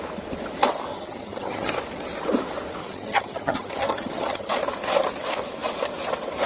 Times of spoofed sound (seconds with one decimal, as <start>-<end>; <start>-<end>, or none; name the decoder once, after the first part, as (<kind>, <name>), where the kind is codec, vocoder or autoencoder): 0.9-1.7 (vocoder, HiFi-GAN); 2.8-4.5